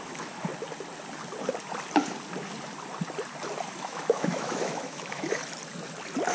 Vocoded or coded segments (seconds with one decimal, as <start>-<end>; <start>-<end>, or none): 0.0-0.5; 3.8-5.4